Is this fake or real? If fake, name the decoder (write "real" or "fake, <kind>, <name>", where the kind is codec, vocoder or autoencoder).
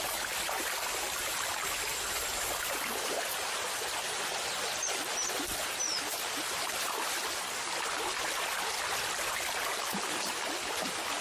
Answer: fake, vocoder, BigVGAN v2